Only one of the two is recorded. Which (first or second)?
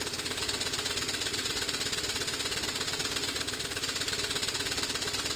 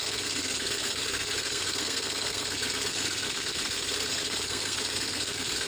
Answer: first